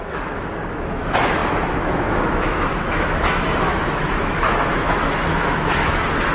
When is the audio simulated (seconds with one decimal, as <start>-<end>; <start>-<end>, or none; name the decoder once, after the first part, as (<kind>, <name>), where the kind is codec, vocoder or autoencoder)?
0.0-6.3 (autoencoder, DAC-VAE)